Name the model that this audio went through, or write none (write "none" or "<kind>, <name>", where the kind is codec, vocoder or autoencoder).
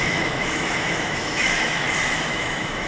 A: autoencoder, DAC-VAE